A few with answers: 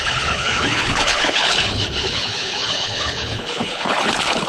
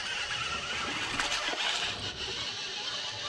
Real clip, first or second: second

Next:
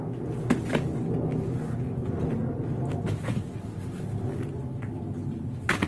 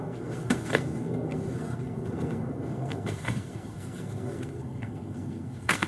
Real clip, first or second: first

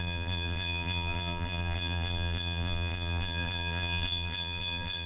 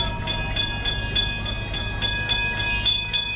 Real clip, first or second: second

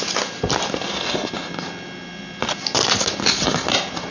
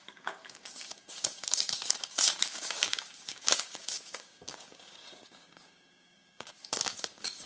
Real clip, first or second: first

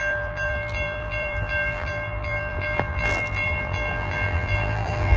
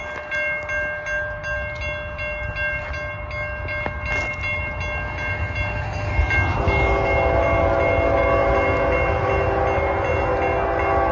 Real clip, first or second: second